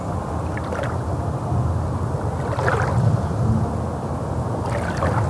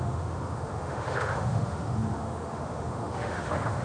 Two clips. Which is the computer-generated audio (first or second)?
second